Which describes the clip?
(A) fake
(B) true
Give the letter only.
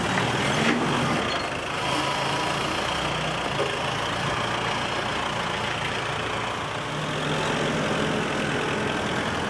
B